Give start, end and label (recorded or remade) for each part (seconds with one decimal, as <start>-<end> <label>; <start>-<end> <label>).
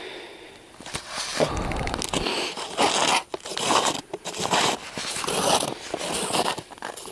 0.0-1.3 recorded; 1.3-1.8 remade; 1.8-3.5 recorded; 3.5-4.2 remade; 4.2-5.0 recorded; 5.0-6.0 remade; 6.0-7.1 recorded